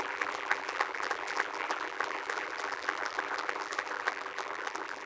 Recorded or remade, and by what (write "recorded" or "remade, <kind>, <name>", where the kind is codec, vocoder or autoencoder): remade, vocoder, BigVGAN v2